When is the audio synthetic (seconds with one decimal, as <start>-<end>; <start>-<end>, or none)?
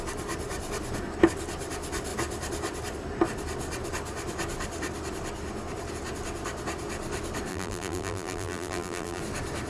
7.5-9.2